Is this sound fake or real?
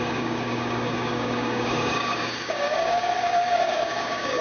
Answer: fake